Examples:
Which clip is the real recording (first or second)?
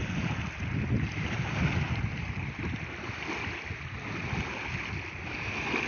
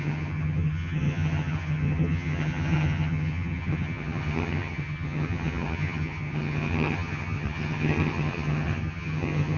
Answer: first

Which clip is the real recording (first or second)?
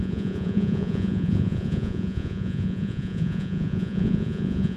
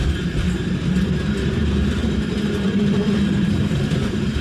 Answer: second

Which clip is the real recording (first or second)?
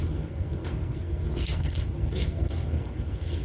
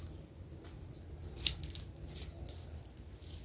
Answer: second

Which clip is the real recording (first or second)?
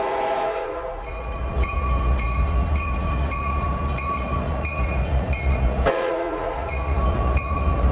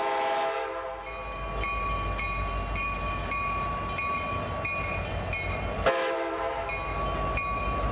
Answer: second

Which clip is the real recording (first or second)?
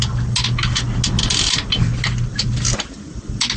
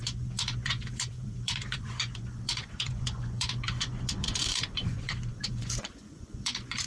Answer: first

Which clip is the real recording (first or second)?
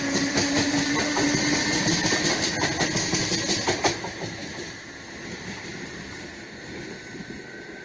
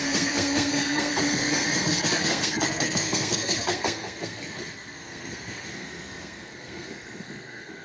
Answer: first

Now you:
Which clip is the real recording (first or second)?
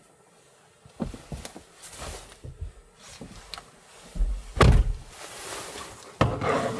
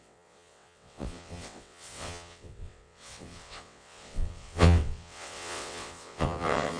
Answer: first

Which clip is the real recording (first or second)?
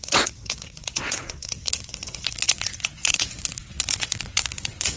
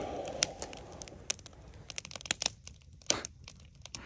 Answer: second